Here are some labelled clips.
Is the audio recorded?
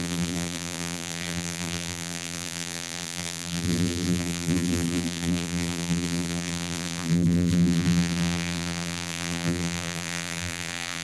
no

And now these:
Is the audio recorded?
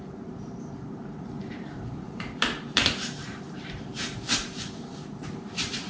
no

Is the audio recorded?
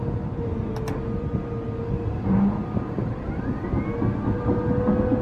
yes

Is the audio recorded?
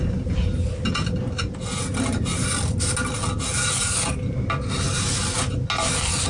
yes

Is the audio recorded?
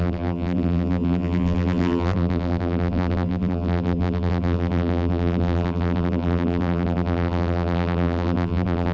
no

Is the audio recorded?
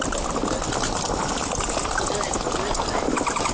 yes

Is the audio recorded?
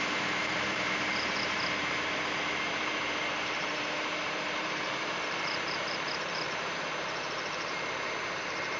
no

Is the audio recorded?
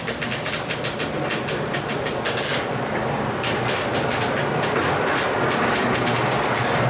no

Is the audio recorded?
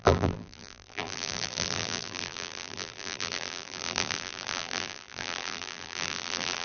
no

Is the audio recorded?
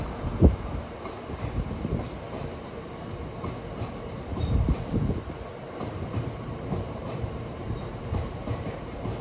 no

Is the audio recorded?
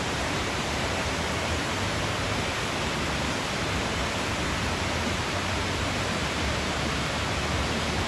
no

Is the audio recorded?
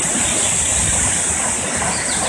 yes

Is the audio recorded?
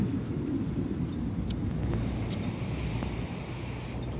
yes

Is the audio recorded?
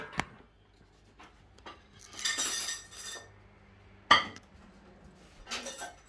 yes